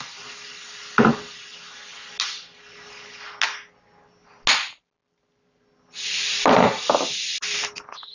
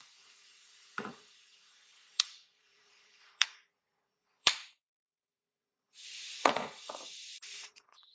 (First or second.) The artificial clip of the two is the second